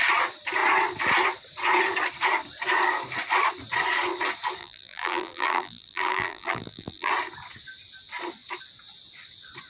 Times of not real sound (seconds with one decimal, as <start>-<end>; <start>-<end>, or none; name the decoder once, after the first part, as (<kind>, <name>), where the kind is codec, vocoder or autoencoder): 4.6-7.1 (vocoder, BigVGAN v2)